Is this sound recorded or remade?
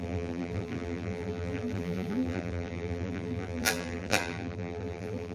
remade